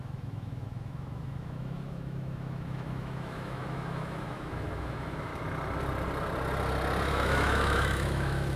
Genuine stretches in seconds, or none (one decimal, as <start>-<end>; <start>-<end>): 5.3-7.1

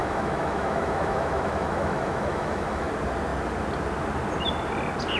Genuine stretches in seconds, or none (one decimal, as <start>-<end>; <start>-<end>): 2.9-5.2

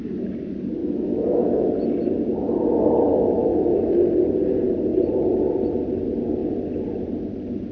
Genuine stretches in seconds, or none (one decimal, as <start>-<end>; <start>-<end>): 0.0-0.8; 1.7-3.1; 3.8-7.7

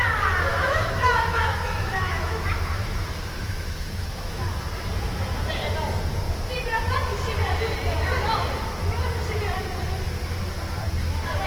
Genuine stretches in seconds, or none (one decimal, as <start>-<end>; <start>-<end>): 0.0-0.5; 4.5-11.5

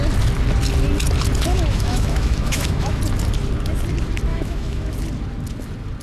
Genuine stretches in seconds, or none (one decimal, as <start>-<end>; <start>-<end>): 0.0-1.5; 3.0-4.3; 4.9-6.0

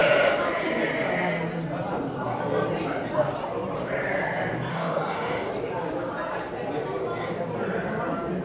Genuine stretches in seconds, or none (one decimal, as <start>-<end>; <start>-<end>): 0.0-4.7; 5.5-8.4